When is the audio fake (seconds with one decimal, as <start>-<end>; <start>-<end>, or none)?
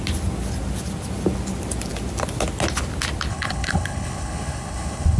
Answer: 3.3-5.2